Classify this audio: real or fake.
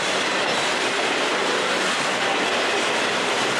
real